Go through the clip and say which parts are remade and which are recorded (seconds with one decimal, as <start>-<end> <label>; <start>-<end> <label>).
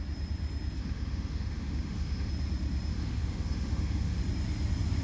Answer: 0.0-0.8 recorded; 0.8-2.3 remade; 2.3-2.9 recorded; 2.9-4.2 remade; 4.2-5.0 recorded